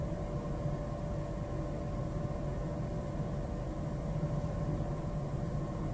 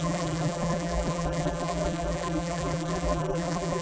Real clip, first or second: first